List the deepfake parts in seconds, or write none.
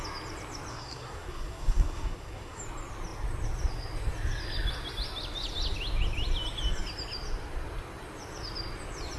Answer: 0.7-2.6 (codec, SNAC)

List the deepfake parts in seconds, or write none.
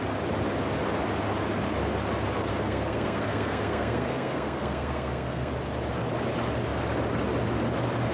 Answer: 2.5-5.5 (codec, SNAC)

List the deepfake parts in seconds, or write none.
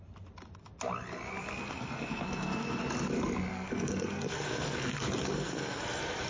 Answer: 1.6-2.8 (codec, SNAC); 3.5-5.8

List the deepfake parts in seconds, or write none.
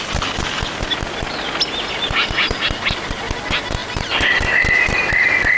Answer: none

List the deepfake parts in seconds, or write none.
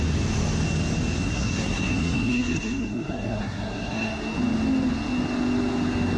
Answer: 1.2-4.1 (codec, SNAC)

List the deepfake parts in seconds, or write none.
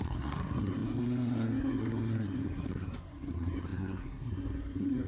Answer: 0.0-5.1 (codec, SNAC)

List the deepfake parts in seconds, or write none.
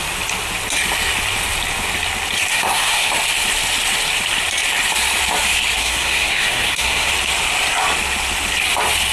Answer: 2.5-3.1 (codec, SNAC); 5.8-7.1